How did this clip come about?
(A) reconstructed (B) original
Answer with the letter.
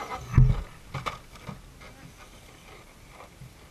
B